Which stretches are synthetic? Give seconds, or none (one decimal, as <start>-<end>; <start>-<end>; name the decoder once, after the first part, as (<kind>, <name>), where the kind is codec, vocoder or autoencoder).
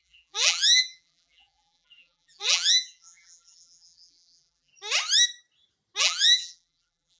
0.0-4.7 (vocoder, BigVGAN v2); 6.0-7.2